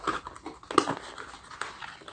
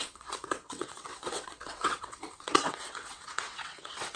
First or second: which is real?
first